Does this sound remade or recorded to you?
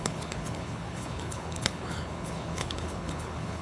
remade